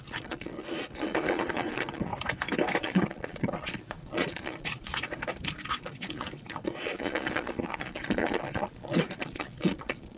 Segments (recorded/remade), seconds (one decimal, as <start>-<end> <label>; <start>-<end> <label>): 0.0-2.1 remade; 2.1-2.8 recorded; 2.8-4.9 remade; 4.9-5.7 recorded; 5.7-10.2 remade